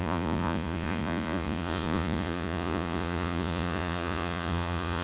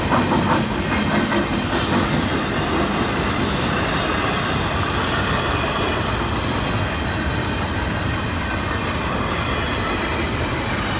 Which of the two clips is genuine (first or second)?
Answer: second